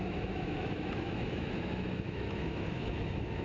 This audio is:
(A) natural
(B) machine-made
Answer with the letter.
B